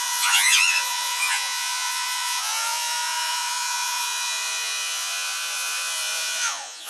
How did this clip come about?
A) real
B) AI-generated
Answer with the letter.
B